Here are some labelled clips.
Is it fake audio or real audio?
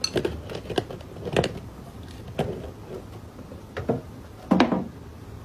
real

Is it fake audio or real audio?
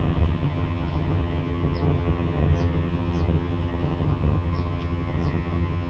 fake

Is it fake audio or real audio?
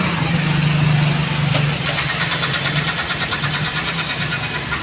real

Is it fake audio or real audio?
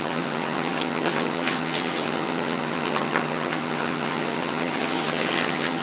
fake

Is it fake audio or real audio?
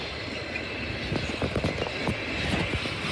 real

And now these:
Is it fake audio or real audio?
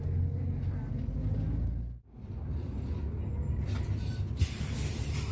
real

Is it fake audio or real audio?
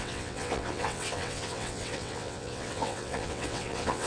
fake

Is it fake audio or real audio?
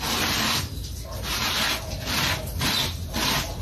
real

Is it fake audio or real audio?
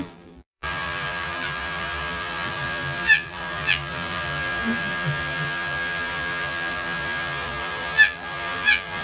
fake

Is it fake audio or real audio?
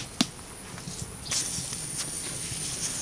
real